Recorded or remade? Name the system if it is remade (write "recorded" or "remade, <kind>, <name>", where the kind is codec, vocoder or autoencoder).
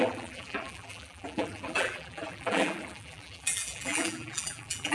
remade, vocoder, BigVGAN v2